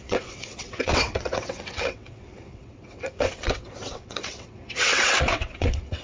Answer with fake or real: fake